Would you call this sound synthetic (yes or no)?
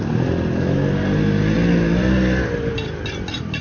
no